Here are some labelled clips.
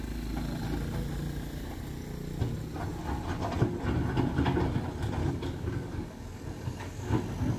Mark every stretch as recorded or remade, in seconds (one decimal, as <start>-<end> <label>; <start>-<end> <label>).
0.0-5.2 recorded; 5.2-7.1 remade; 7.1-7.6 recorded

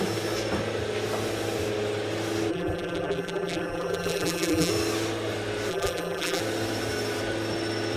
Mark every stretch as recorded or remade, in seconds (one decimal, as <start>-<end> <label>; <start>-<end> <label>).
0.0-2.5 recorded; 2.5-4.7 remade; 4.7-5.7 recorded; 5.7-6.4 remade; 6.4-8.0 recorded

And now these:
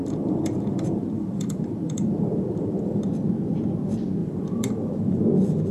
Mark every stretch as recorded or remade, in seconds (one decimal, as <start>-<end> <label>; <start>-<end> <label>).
0.0-3.0 remade; 3.0-4.2 recorded; 4.2-5.2 remade; 5.2-5.7 recorded

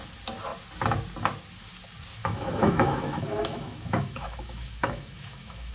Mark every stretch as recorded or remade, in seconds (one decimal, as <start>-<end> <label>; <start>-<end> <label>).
0.0-2.2 recorded; 2.2-5.7 remade

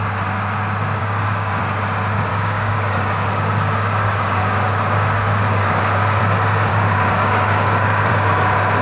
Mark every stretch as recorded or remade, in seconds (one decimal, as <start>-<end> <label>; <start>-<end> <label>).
0.0-1.0 recorded; 1.0-1.6 remade; 1.6-2.3 recorded; 2.3-6.2 remade; 6.2-6.7 recorded; 6.7-8.1 remade; 8.1-8.8 recorded

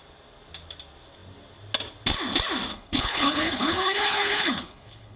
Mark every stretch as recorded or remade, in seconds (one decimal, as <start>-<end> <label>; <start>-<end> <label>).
0.0-2.7 recorded; 2.7-5.2 remade

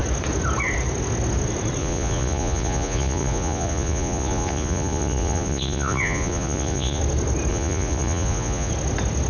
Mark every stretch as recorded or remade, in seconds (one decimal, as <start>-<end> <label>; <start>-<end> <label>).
0.0-1.8 recorded; 1.8-7.0 remade; 7.0-7.5 recorded; 7.5-8.7 remade; 8.7-9.3 recorded

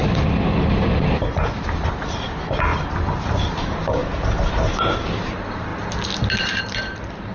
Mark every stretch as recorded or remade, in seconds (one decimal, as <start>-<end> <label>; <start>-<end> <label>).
0.0-0.9 recorded; 0.9-4.0 remade; 4.0-4.6 recorded; 4.6-5.7 remade; 5.7-6.4 recorded; 6.4-7.3 remade